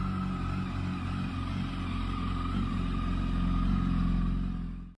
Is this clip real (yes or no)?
yes